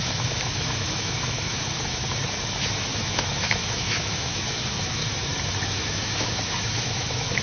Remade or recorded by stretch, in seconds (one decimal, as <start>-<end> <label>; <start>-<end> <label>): 0.0-2.0 remade; 2.0-2.9 recorded; 2.9-5.0 remade; 5.0-5.6 recorded; 5.6-7.4 remade